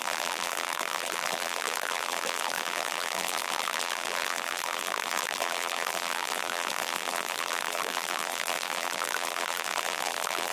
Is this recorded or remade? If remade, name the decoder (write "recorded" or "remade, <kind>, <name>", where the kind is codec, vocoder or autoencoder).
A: remade, vocoder, BigVGAN v2